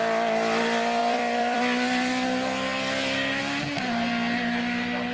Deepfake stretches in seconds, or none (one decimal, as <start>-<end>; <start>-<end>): 1.0-3.4